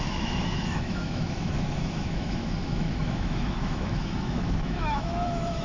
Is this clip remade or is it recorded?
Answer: remade